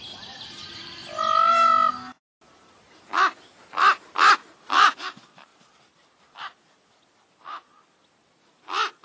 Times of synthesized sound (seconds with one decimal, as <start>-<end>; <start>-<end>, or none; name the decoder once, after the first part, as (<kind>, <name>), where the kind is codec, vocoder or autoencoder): 0.0-1.0 (vocoder, BigVGAN v2); 4.7-5.5